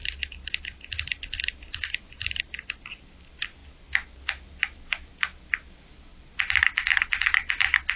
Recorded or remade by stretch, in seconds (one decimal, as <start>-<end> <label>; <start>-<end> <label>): 0.0-8.0 recorded